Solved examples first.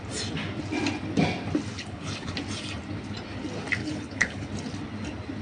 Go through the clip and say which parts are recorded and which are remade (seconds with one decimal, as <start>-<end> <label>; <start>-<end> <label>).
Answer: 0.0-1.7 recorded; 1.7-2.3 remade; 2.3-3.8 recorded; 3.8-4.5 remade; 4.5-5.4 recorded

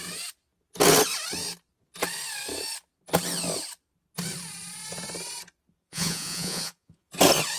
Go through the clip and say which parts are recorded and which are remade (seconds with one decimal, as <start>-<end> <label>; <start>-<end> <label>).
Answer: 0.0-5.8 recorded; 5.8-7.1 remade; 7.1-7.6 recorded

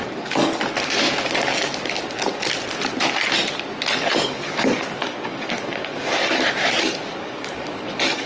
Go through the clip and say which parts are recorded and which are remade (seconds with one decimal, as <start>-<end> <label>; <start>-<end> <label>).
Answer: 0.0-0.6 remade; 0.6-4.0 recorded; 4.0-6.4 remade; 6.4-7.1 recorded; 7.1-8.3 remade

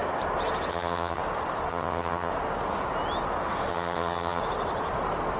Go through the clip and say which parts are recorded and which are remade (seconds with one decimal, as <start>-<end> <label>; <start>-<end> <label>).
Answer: 0.0-0.7 recorded; 0.7-1.2 remade; 1.2-1.7 recorded; 1.7-2.3 remade; 2.3-3.7 recorded; 3.7-4.4 remade; 4.4-5.4 recorded